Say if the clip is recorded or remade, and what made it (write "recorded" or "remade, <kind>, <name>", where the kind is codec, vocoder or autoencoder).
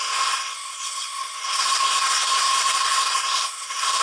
remade, codec, SNAC